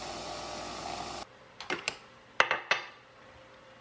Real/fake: real